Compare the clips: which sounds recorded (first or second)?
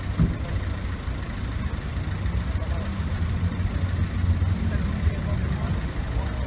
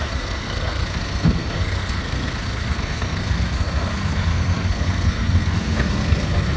first